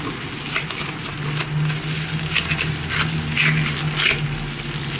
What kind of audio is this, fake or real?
real